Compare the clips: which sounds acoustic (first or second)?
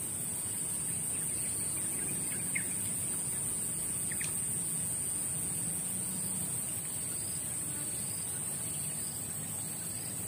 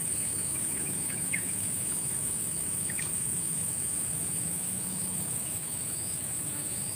first